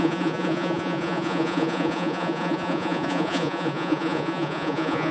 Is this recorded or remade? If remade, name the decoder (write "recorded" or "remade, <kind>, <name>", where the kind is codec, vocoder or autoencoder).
remade, vocoder, Vocos